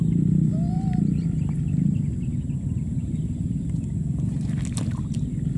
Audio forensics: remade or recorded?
recorded